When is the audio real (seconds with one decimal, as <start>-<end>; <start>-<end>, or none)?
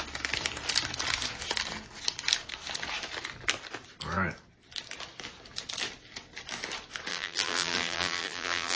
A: 0.0-7.1